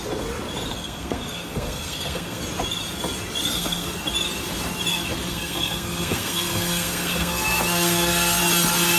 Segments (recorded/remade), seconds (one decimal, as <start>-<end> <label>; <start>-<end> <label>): 0.0-0.7 recorded; 0.7-2.4 remade; 2.4-3.4 recorded; 3.4-4.0 remade; 4.0-4.9 recorded; 4.9-8.4 remade; 8.4-9.0 recorded